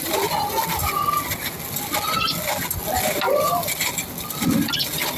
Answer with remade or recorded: recorded